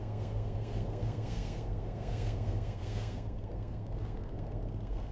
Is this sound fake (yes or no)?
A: yes